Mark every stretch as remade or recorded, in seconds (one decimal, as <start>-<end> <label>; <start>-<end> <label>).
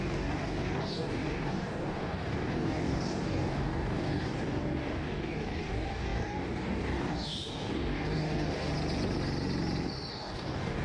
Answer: 0.0-8.7 remade; 8.7-10.1 recorded; 10.1-10.8 remade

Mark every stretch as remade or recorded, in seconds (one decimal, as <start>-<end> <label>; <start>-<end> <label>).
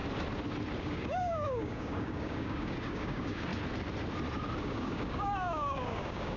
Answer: 0.0-0.8 recorded; 0.8-3.5 remade; 3.5-4.6 recorded; 4.6-6.4 remade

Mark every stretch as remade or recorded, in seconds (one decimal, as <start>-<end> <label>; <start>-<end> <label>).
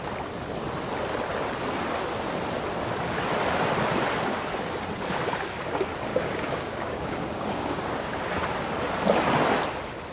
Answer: 0.0-6.1 recorded; 6.1-8.1 remade; 8.1-10.1 recorded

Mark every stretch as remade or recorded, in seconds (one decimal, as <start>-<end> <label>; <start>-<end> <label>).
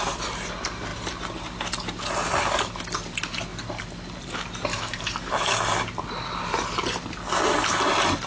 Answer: 0.0-4.7 recorded; 4.7-5.3 remade; 5.3-8.3 recorded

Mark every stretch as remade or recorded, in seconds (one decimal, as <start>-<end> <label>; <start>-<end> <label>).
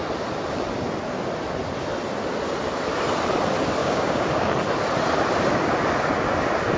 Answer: 0.0-3.8 recorded; 3.8-4.5 remade; 4.5-6.8 recorded